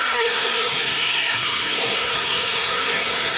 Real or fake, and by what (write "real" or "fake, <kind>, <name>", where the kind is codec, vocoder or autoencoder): fake, codec, SNAC